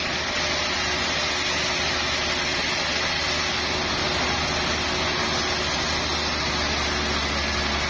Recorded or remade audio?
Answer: recorded